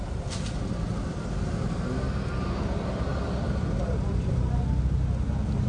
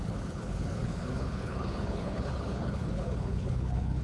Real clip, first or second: first